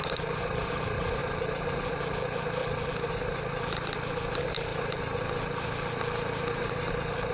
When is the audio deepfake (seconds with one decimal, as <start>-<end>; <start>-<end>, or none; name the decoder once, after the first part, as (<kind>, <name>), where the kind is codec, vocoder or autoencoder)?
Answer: 0.0-2.6 (vocoder, BigVGAN v2); 4.3-7.3